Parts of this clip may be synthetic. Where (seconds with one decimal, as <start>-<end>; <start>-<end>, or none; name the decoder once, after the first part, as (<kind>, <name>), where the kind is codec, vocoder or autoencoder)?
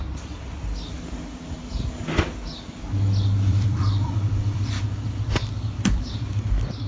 3.5-6.0 (vocoder, BigVGAN v2)